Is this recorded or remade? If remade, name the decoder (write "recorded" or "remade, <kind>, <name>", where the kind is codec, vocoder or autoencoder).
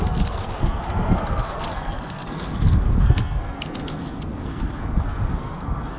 remade, codec, SNAC